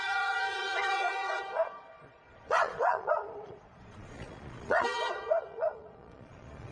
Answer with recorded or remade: remade